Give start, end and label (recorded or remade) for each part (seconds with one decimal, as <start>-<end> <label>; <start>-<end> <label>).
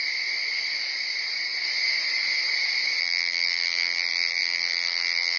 0.0-3.0 recorded; 3.0-5.4 remade